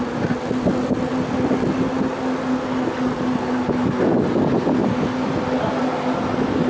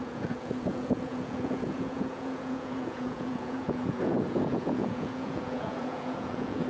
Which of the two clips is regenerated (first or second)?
second